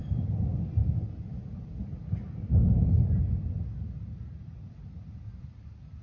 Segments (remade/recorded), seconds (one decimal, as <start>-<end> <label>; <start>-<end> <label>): 0.0-6.0 recorded